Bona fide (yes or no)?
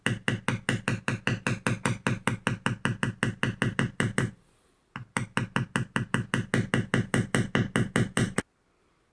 yes